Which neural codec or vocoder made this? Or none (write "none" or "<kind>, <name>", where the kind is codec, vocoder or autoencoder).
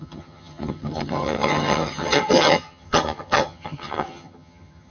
vocoder, HiFi-GAN